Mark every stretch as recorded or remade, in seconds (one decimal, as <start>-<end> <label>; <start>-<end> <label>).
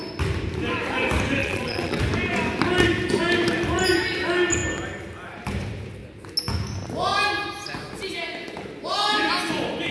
0.0-1.4 recorded; 1.4-2.0 remade; 2.0-9.9 recorded